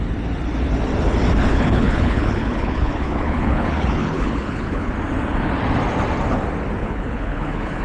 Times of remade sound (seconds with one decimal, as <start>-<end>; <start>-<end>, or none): 1.5-4.9; 6.8-7.8